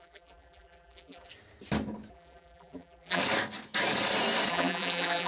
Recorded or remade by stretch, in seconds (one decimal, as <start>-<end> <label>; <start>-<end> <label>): 0.0-1.3 remade; 1.3-2.1 recorded; 2.1-3.2 remade; 3.2-4.5 recorded; 4.5-5.3 remade